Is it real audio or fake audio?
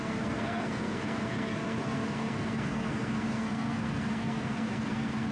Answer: fake